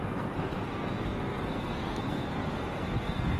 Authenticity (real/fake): fake